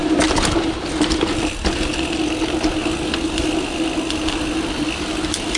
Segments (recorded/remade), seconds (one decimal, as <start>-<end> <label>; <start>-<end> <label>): 0.0-1.9 remade; 1.9-5.6 recorded